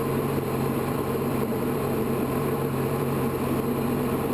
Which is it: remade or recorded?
remade